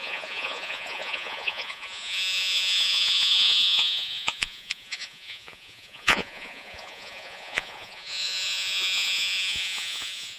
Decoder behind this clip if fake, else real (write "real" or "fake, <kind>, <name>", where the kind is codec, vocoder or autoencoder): fake, vocoder, Vocos